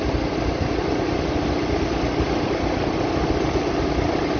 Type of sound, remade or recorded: recorded